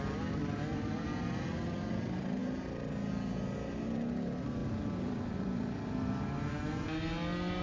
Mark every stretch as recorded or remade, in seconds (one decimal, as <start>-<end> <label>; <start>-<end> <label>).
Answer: 0.0-0.7 recorded; 0.7-1.4 remade; 1.4-4.6 recorded; 4.6-6.1 remade; 6.1-7.6 recorded

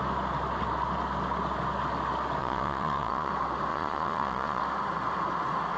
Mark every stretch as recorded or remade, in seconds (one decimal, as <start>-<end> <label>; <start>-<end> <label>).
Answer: 0.0-2.4 recorded; 2.4-3.3 remade; 3.3-3.7 recorded; 3.7-4.6 remade; 4.6-5.8 recorded

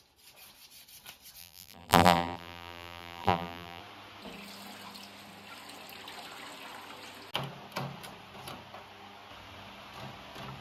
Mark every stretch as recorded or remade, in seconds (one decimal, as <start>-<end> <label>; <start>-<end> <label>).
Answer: 0.0-1.4 recorded; 1.4-3.8 remade; 3.8-10.6 recorded